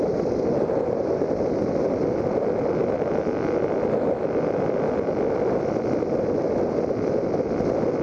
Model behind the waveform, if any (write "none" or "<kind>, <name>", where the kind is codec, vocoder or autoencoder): none